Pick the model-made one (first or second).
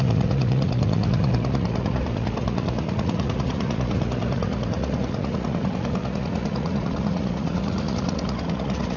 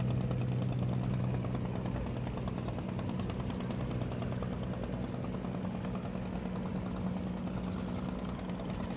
first